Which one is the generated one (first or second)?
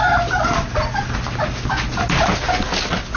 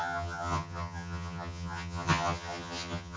second